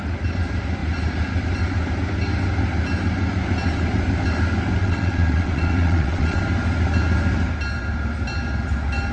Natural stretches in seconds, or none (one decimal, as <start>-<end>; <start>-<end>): 0.0-4.8; 6.4-9.1